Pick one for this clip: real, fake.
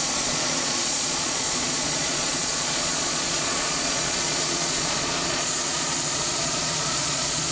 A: fake